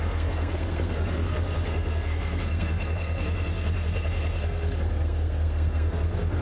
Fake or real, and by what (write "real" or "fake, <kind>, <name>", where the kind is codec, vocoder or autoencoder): fake, codec, SNAC